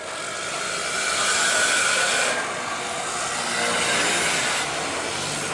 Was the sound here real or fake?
real